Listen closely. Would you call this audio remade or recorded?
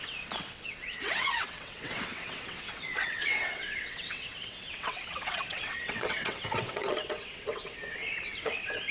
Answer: remade